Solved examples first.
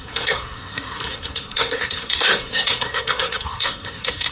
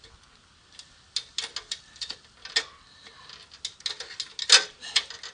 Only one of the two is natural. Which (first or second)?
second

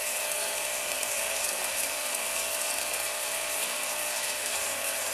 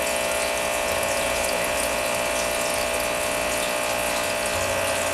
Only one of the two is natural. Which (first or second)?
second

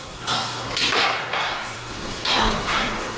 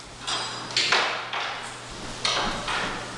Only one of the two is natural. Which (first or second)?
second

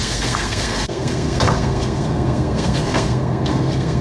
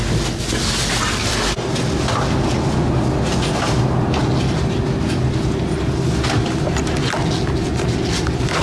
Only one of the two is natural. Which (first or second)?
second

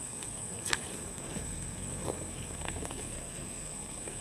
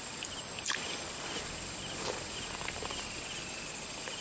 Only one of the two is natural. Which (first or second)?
second